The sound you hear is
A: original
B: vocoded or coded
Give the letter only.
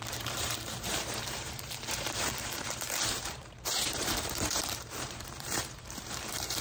B